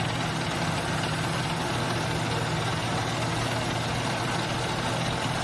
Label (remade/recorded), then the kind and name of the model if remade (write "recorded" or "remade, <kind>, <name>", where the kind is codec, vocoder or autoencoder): recorded